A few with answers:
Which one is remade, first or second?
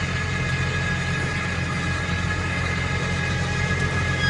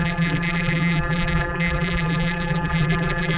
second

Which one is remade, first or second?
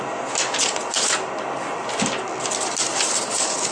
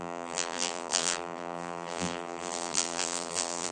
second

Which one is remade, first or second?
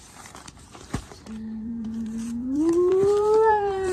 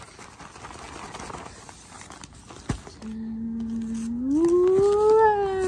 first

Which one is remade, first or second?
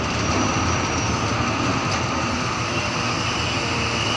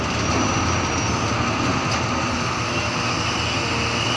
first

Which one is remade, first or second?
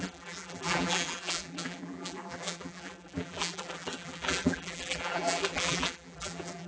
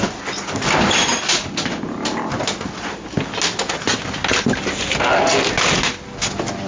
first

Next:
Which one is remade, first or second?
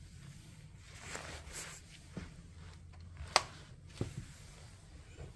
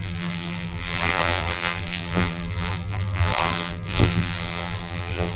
second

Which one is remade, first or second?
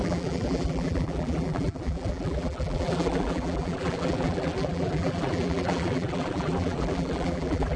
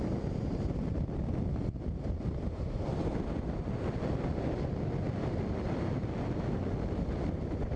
first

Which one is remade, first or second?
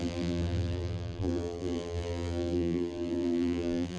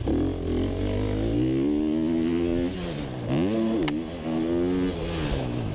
first